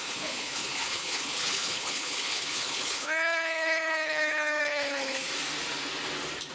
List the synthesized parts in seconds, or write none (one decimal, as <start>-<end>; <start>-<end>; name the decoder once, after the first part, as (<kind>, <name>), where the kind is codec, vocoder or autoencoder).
0.0-5.3 (codec, HILCodec)